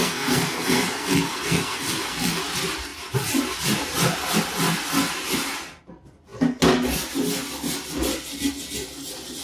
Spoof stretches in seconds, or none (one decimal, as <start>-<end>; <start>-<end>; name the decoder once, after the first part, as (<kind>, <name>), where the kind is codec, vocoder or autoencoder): 0.0-2.4 (codec, SNAC)